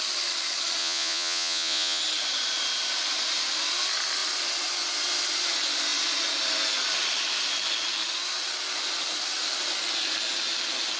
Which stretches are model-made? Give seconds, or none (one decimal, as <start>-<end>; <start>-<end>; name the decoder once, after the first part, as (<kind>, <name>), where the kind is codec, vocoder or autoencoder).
0.8-2.0 (vocoder, Vocos)